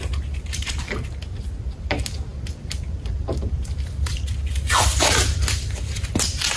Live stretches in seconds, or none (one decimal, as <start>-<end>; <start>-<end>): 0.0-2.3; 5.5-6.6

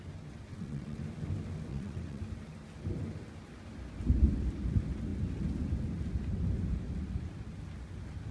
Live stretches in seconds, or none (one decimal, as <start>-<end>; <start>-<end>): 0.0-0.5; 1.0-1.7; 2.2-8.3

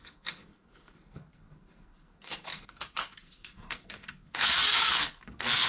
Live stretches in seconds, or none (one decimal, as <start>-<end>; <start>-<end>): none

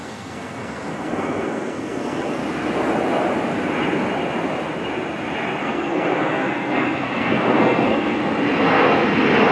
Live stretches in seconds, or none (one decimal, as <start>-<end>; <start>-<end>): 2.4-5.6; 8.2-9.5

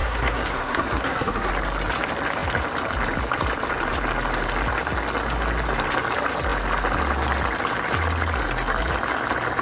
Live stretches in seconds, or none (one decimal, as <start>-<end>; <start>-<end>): 1.5-9.6